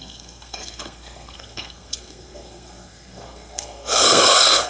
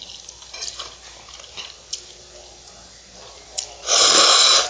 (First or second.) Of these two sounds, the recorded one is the second